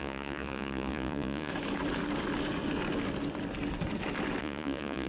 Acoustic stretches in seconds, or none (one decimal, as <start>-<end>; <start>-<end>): 1.5-4.4